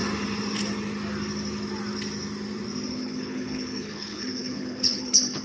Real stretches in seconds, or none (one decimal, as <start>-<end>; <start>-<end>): 0.0-2.9